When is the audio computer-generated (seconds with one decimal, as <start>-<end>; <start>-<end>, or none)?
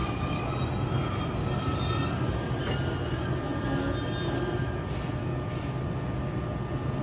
none